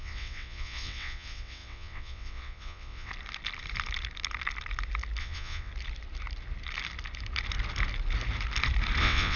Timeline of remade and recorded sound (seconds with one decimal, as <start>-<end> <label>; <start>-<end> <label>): 0.0-3.1 remade; 3.1-5.2 recorded; 5.2-5.7 remade; 5.7-9.0 recorded; 9.0-9.4 remade

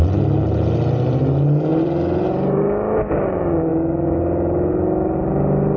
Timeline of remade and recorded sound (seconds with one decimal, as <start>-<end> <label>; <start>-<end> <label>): 0.0-1.7 recorded; 1.7-2.6 remade; 2.6-5.8 recorded

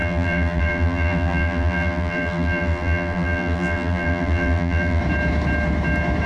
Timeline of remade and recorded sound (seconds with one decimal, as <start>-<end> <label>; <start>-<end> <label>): 0.0-5.0 remade; 5.0-6.3 recorded

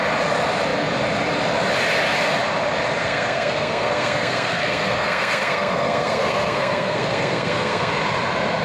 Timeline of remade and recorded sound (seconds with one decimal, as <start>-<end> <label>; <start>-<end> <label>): 0.0-3.0 recorded; 3.0-7.9 remade; 7.9-8.6 recorded

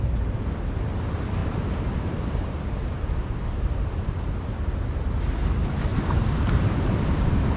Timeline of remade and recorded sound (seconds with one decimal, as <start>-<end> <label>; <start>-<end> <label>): 0.0-1.4 recorded; 1.4-4.3 remade; 4.3-5.9 recorded; 5.9-7.6 remade

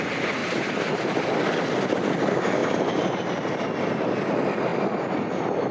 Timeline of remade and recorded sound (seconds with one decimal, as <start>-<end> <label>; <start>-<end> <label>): 0.0-2.6 recorded; 2.6-4.3 remade; 4.3-5.7 recorded